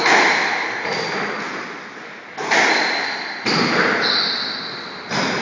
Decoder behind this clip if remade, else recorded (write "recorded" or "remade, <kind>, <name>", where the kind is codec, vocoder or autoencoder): recorded